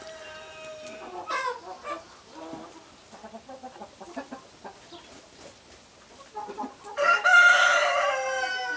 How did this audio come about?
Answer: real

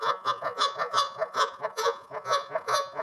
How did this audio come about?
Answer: fake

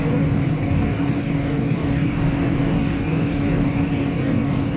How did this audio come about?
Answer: fake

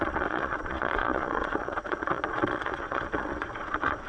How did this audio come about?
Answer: fake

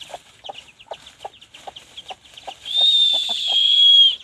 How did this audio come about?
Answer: real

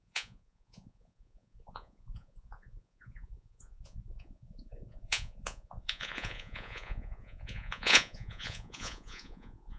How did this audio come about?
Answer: fake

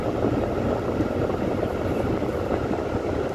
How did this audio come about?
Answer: real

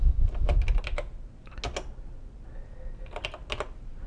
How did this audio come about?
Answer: real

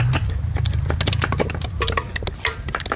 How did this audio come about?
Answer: real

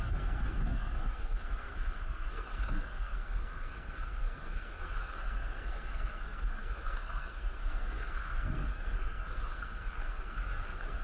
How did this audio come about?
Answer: fake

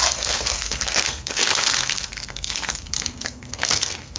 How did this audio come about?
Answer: fake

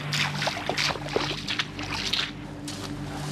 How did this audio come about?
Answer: real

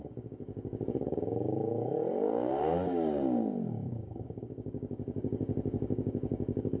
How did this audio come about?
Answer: fake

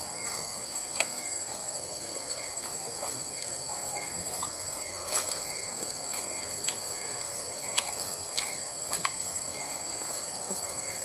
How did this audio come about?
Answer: fake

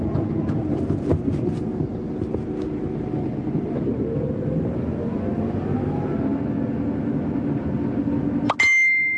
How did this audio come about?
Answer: real